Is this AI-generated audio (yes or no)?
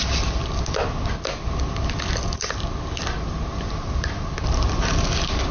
no